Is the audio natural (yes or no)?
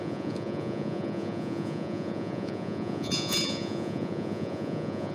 no